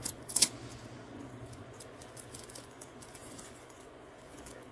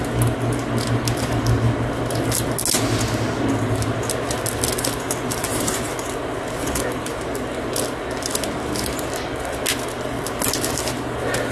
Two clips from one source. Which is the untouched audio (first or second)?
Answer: second